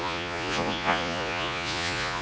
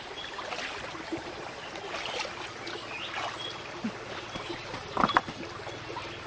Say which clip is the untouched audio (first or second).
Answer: second